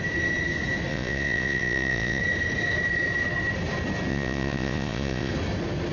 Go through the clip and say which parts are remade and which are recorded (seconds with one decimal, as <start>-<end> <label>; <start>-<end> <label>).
0.0-0.9 recorded; 0.9-2.2 remade; 2.2-4.1 recorded; 4.1-5.3 remade; 5.3-5.9 recorded